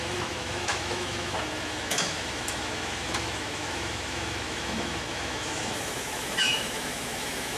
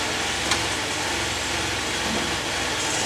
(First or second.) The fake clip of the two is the first